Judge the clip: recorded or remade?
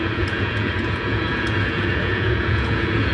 remade